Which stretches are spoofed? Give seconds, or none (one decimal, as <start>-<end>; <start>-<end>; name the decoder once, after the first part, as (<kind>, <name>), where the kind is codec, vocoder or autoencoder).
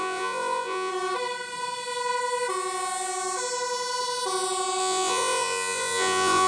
0.0-0.9 (vocoder, Vocos); 4.8-6.5